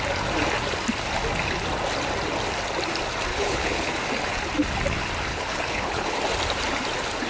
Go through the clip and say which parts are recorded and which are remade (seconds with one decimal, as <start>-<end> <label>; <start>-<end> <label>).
0.0-3.3 recorded; 3.3-3.9 remade; 3.9-5.3 recorded; 5.3-6.2 remade; 6.2-7.3 recorded